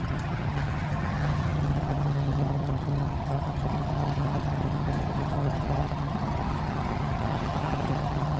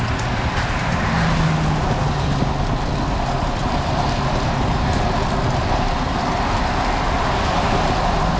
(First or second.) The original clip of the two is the second